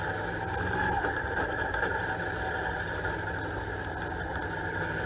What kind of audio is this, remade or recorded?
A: recorded